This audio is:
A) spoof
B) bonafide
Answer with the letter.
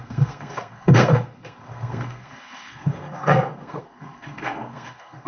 A